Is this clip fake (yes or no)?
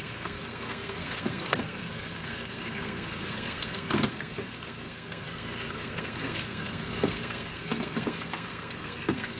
yes